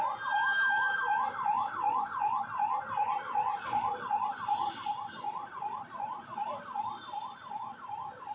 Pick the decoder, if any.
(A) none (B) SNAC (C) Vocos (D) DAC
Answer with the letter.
A